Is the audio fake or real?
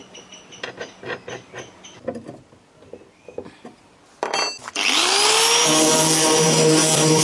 real